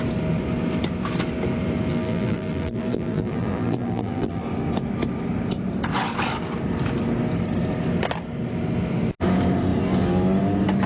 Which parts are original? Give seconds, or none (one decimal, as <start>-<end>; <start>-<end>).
0.0-1.9; 4.4-10.9